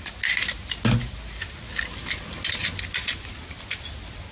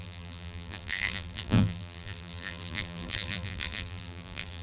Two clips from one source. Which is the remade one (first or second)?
second